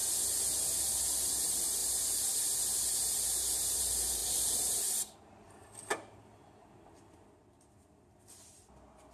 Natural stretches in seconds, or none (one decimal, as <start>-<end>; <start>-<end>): 0.0-1.8; 3.8-4.2; 5.1-5.9; 6.6-9.1

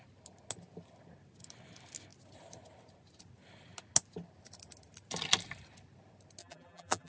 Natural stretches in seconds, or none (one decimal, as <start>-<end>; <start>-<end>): 0.0-6.4

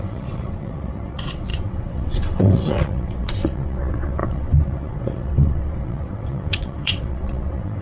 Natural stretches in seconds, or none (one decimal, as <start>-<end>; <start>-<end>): none

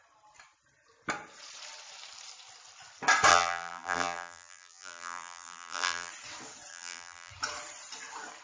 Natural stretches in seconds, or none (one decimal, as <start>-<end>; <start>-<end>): 0.0-3.3; 6.1-6.7; 7.3-8.4